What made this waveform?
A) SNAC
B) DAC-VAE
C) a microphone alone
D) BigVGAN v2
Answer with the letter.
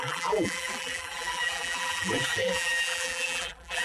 D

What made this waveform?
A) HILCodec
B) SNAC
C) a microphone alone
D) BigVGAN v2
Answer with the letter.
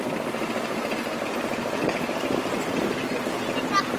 C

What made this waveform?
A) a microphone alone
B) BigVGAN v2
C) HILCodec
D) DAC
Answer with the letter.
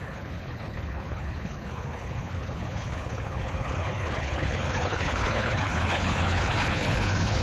C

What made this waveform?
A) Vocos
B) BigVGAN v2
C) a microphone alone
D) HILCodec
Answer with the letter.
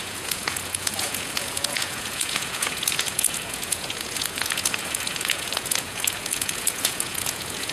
A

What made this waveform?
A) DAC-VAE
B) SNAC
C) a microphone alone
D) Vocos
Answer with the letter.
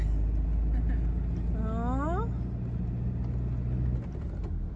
C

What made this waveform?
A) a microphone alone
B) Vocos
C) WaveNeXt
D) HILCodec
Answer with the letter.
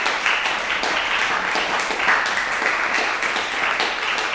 A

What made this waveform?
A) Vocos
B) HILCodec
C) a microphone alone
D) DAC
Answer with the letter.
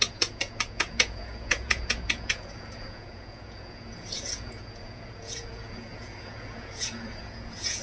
A